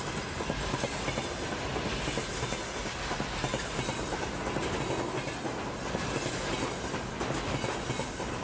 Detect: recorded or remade recorded